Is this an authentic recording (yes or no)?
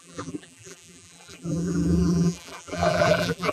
no